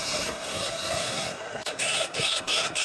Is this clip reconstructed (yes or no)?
yes